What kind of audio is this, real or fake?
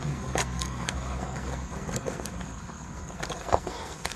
fake